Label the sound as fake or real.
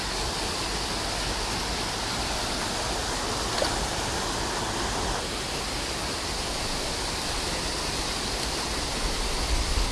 real